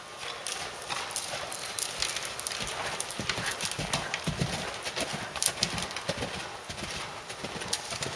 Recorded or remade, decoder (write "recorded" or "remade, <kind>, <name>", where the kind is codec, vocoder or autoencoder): recorded